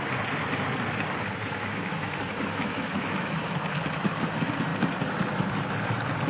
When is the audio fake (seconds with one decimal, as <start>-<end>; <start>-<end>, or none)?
1.4-3.4